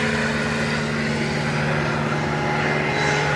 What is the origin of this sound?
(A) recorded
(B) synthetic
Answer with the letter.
A